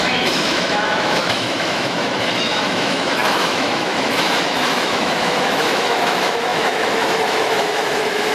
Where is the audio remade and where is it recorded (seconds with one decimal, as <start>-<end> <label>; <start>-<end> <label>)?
0.0-8.3 remade

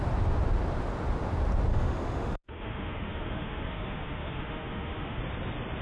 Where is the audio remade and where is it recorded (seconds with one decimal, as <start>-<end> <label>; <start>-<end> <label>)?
0.0-1.7 recorded; 1.7-5.2 remade; 5.2-5.8 recorded

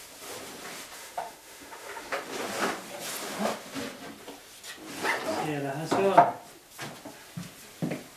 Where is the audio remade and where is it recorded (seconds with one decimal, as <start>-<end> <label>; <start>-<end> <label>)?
0.0-1.0 recorded; 1.0-2.1 remade; 2.1-8.2 recorded

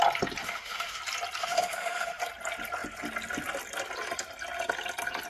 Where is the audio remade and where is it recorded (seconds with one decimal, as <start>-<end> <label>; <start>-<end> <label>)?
0.0-0.4 recorded; 0.4-1.0 remade; 1.0-1.4 recorded; 1.4-2.2 remade; 2.2-5.3 recorded

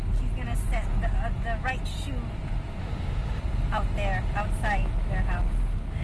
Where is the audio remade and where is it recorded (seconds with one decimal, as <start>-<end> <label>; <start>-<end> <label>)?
0.0-2.8 recorded; 2.8-3.4 remade; 3.4-6.0 recorded

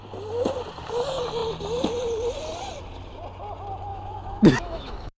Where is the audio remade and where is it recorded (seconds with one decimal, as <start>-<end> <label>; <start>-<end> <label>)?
0.0-3.9 recorded; 3.9-5.2 remade

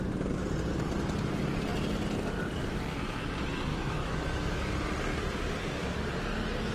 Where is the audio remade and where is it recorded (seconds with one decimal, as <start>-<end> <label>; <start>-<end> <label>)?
0.0-3.7 recorded; 3.7-4.7 remade; 4.7-6.7 recorded